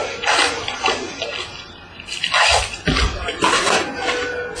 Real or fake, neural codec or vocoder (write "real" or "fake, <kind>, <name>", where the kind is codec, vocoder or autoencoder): real